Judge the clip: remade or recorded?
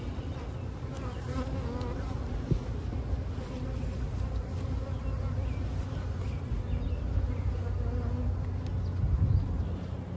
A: recorded